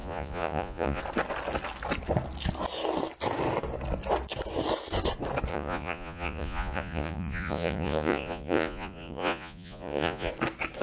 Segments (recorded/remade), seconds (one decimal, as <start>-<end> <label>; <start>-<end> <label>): 0.0-1.0 remade; 1.0-5.5 recorded; 5.5-10.3 remade; 10.3-10.8 recorded